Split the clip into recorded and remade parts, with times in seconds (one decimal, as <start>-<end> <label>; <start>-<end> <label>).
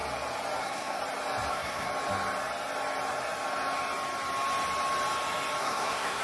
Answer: 0.0-0.6 recorded; 0.6-1.0 remade; 1.0-1.5 recorded; 1.5-1.9 remade; 1.9-5.6 recorded; 5.6-6.2 remade